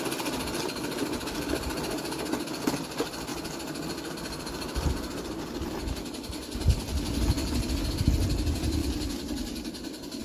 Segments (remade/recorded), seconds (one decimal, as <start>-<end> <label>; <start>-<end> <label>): 0.0-3.3 remade; 3.3-4.1 recorded; 4.1-7.4 remade; 7.4-7.9 recorded; 7.9-10.2 remade